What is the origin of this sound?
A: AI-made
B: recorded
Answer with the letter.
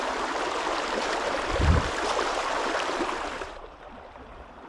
A